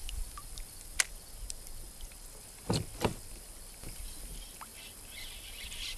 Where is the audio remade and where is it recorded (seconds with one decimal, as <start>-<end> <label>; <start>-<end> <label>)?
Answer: 0.0-6.0 recorded